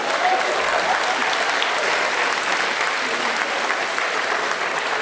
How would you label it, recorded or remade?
recorded